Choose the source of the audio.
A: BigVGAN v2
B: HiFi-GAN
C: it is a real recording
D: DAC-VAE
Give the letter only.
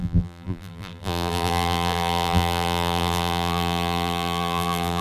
A